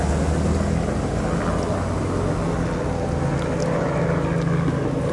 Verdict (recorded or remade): recorded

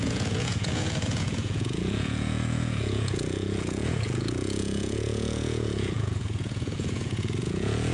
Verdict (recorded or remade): remade